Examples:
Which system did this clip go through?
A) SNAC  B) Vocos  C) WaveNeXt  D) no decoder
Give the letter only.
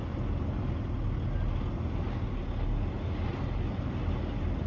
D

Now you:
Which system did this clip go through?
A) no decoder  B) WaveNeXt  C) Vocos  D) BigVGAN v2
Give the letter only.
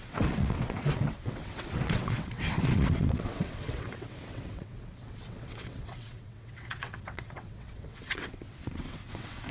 B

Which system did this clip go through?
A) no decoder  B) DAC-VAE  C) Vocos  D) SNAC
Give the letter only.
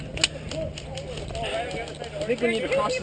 A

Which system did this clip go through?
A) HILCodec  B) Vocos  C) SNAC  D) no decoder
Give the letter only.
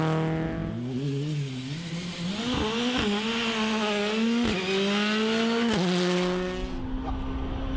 D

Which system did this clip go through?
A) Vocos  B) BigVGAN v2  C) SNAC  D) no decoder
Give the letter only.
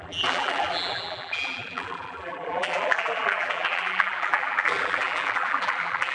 B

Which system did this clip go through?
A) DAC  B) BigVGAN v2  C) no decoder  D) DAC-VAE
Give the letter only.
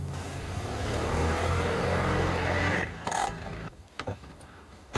A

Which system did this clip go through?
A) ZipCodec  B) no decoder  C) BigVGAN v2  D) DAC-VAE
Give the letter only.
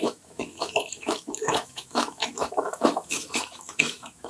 D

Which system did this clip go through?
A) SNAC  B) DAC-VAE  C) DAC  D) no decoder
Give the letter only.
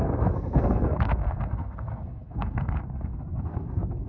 A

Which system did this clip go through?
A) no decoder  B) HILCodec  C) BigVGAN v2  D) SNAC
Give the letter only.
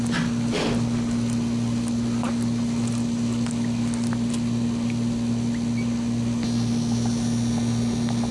A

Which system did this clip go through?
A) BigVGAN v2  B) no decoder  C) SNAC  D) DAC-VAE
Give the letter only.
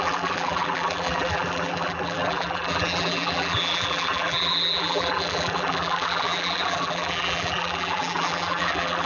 A